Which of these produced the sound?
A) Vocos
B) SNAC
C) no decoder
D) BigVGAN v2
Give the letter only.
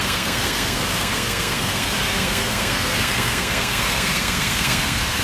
B